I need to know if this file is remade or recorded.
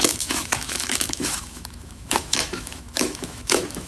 remade